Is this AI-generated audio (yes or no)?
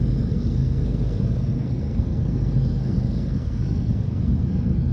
yes